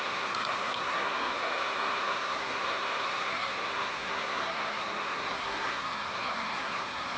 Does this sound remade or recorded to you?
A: remade